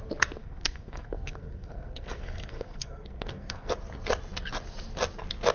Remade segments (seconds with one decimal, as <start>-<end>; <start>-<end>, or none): 0.4-3.7